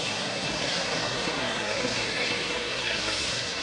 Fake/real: fake